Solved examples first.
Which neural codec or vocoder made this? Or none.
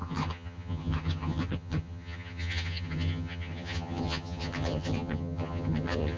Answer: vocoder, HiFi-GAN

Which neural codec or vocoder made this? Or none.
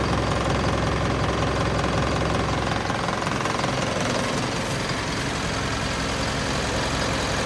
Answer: none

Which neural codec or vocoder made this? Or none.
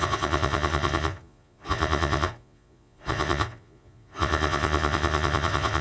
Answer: vocoder, Vocos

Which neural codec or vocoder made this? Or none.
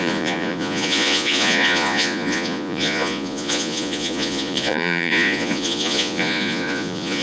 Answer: vocoder, Vocos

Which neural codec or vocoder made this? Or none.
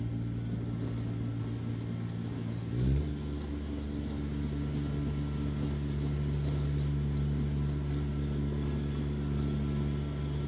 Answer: none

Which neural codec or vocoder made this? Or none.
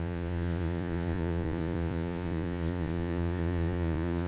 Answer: vocoder, Vocos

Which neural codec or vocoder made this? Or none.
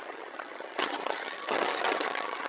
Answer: vocoder, HiFi-GAN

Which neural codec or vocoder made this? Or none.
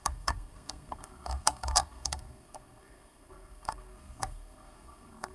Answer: codec, SNAC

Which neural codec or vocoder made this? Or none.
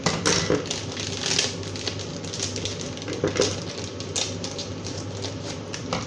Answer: none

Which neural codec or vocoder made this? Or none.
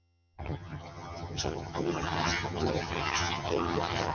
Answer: vocoder, HiFi-GAN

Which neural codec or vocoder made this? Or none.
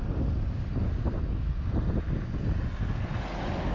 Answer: none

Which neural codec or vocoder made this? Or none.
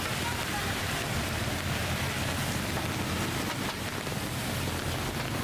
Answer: none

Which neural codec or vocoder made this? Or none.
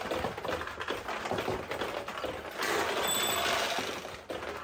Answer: none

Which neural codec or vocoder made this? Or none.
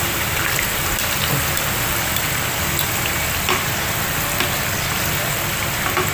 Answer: none